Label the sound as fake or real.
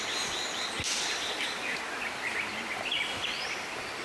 real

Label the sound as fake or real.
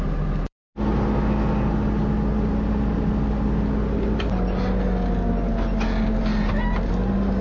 real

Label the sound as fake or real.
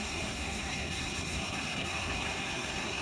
fake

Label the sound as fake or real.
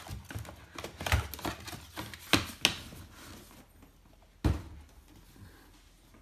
real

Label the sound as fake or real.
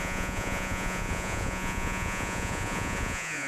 fake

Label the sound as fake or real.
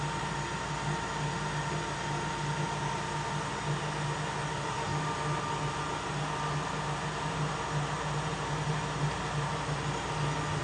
real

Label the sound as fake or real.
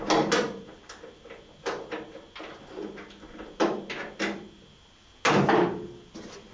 real